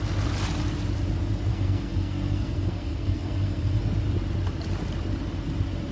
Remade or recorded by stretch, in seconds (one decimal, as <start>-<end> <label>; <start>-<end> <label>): 0.0-1.5 recorded; 1.5-3.8 remade; 3.8-5.9 recorded